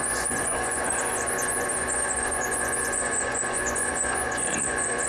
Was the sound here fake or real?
fake